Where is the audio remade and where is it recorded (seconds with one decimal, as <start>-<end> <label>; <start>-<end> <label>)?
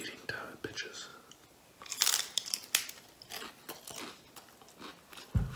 0.0-1.1 recorded; 1.1-3.3 remade; 3.3-4.9 recorded; 4.9-5.6 remade